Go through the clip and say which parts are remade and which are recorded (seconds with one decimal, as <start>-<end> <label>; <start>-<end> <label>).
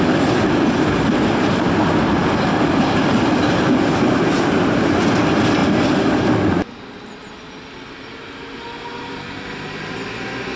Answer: 0.0-10.6 recorded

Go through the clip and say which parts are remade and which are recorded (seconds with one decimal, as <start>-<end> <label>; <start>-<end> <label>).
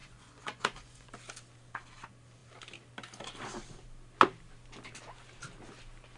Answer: 0.0-1.1 remade; 1.1-6.2 recorded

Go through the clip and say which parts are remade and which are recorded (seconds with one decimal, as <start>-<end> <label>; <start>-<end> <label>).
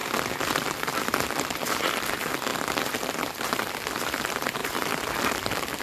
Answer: 0.0-5.8 recorded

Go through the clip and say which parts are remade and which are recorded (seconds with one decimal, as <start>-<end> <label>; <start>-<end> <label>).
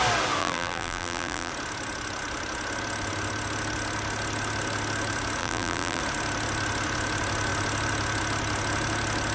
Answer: 0.0-0.4 recorded; 0.4-1.5 remade; 1.5-5.4 recorded; 5.4-6.0 remade; 6.0-9.3 recorded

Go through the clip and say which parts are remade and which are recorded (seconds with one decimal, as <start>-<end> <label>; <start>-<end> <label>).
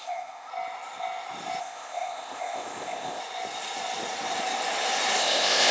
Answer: 0.0-0.5 remade; 0.5-1.6 recorded; 1.6-3.2 remade; 3.2-5.2 recorded; 5.2-5.7 remade